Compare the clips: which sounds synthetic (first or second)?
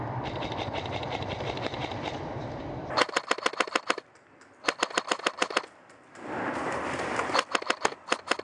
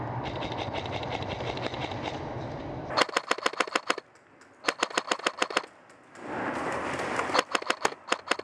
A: first